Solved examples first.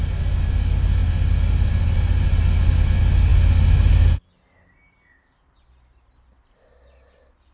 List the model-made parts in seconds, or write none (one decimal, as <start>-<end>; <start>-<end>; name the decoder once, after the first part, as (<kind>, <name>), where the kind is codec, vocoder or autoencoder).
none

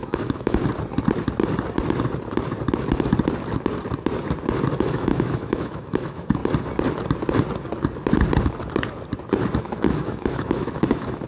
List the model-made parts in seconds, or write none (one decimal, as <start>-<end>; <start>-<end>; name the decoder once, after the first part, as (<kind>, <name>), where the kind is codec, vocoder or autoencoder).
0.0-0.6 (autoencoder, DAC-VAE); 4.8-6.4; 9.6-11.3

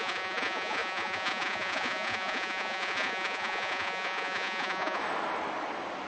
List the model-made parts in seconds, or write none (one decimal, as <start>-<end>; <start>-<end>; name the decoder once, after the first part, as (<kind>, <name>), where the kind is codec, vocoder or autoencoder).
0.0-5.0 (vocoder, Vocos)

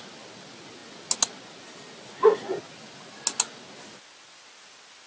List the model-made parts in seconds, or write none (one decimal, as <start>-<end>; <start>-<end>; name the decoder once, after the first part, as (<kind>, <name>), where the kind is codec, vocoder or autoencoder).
none